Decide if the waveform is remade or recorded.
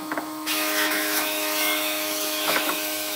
remade